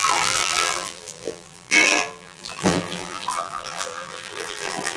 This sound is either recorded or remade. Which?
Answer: remade